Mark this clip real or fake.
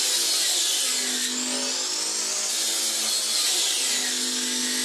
real